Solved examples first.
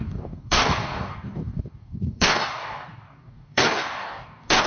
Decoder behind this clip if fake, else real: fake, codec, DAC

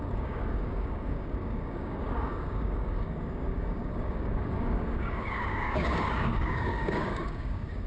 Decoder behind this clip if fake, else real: fake, codec, DAC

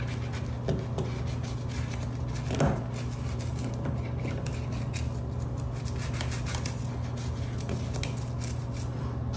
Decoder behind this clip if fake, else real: real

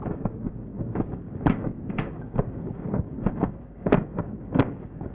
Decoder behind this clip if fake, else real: fake, codec, DAC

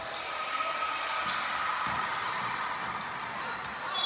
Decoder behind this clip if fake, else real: real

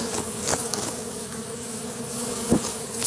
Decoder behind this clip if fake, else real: fake, codec, DAC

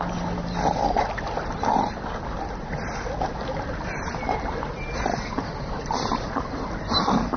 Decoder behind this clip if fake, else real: real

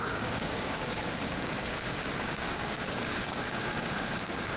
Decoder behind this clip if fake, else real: fake, codec, DAC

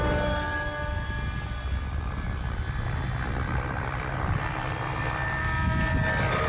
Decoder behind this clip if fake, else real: real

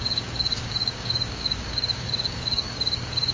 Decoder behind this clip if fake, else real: fake, codec, DAC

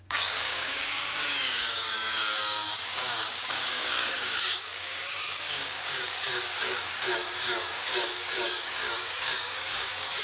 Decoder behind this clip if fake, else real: fake, codec, DAC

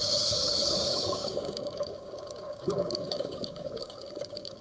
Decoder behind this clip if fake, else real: fake, codec, DAC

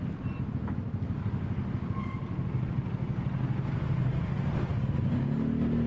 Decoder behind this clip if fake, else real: real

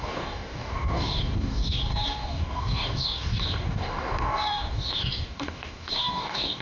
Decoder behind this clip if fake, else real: fake, codec, DAC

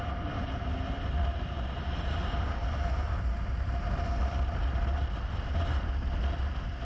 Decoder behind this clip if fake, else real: real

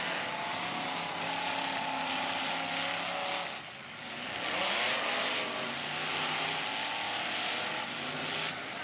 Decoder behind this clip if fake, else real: real